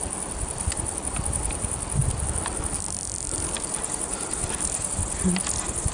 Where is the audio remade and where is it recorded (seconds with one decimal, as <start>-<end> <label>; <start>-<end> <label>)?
0.0-5.9 recorded